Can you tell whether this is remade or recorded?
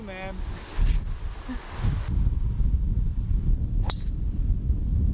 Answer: recorded